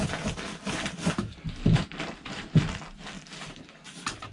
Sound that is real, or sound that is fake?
fake